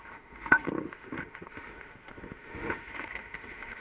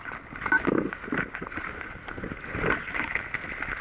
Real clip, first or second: second